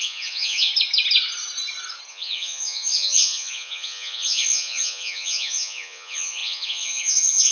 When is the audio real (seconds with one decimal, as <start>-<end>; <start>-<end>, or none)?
0.7-2.1